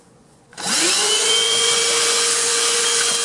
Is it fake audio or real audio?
fake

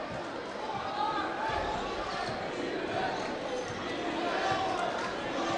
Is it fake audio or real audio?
real